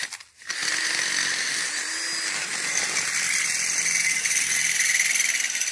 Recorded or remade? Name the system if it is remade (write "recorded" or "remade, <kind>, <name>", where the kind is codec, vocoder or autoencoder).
recorded